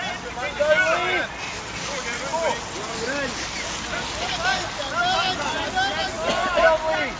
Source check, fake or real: real